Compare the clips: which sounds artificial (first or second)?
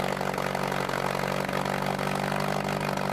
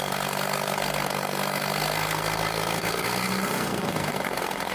second